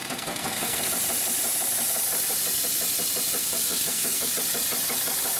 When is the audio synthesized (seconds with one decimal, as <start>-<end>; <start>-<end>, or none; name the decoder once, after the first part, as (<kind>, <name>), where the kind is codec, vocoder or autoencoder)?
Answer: 0.0-0.8 (codec, SNAC); 3.4-4.3